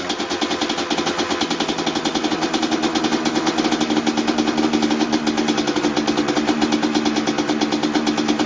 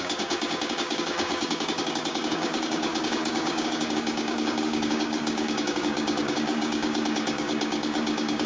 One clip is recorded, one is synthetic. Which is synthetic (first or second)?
second